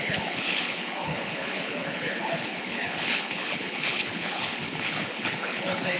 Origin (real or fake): fake